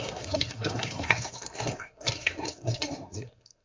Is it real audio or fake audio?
fake